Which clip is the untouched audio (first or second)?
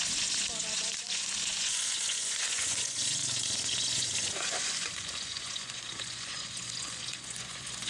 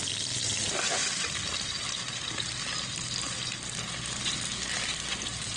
second